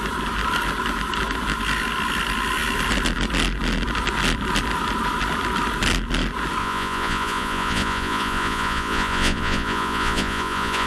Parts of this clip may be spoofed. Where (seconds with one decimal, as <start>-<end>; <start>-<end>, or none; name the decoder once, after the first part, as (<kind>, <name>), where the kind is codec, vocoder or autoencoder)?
6.6-10.9 (vocoder, Vocos)